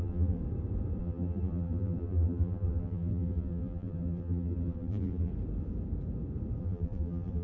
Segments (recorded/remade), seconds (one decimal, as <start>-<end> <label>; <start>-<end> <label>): 0.0-0.4 remade; 0.4-1.0 recorded; 1.0-5.3 remade; 5.3-6.6 recorded; 6.6-7.4 remade